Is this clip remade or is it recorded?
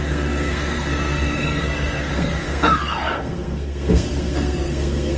remade